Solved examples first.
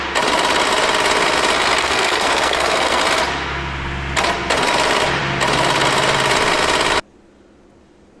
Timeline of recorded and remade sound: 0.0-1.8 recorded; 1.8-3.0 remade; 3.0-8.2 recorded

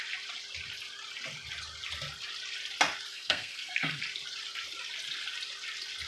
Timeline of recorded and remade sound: 0.0-3.1 recorded; 3.1-4.0 remade; 4.0-6.1 recorded